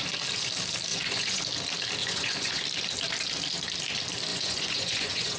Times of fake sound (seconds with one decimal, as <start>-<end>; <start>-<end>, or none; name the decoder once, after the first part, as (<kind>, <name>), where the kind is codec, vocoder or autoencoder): 0.9-1.4 (vocoder, Vocos); 2.0-2.6; 4.3-5.4